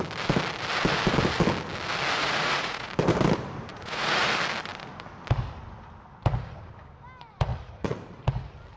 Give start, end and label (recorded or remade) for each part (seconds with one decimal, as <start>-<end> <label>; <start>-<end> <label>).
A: 0.0-2.2 recorded; 2.2-2.9 remade; 2.9-3.7 recorded; 3.7-4.3 remade; 4.3-7.5 recorded; 7.5-8.2 remade; 8.2-8.8 recorded